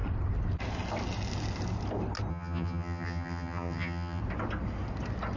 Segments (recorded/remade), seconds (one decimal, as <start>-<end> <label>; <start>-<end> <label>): 0.0-2.3 recorded; 2.3-4.2 remade; 4.2-5.4 recorded